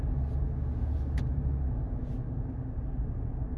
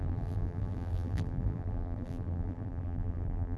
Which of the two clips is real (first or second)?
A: first